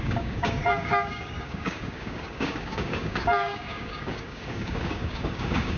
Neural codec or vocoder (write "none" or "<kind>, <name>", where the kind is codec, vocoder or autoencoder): codec, DAC